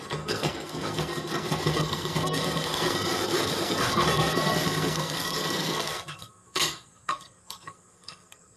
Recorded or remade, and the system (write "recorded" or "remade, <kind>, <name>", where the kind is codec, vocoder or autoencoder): remade, codec, SNAC